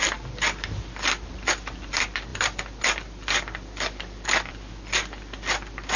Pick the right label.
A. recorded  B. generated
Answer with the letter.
A